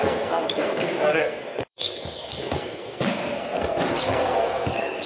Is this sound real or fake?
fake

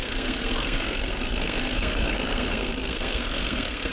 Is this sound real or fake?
fake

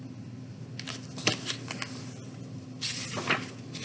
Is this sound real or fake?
real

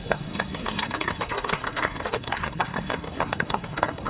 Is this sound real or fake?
fake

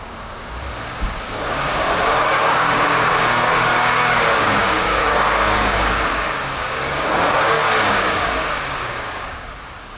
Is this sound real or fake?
fake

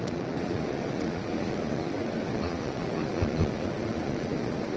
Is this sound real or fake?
fake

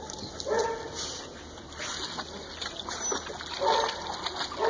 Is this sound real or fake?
real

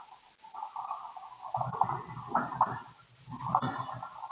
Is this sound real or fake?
real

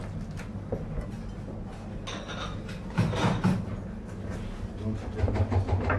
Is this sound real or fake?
real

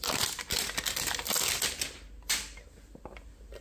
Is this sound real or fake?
real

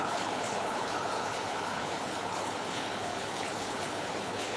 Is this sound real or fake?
fake